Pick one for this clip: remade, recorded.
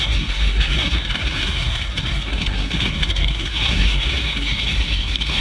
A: remade